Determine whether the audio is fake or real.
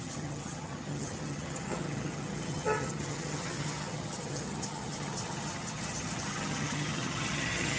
fake